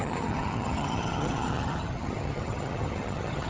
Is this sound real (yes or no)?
no